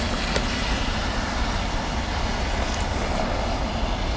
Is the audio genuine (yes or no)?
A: yes